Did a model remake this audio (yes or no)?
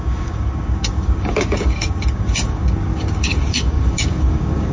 yes